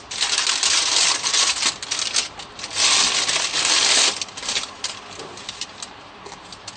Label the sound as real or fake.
real